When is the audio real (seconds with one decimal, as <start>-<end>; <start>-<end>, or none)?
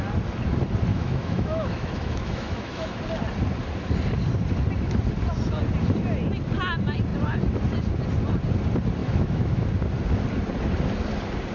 0.0-0.9; 3.0-9.0; 9.7-11.5